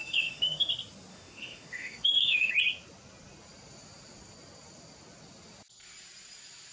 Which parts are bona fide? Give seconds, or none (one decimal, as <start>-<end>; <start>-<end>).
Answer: 0.7-1.1; 2.5-6.7